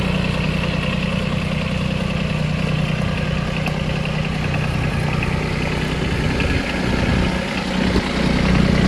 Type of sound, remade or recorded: recorded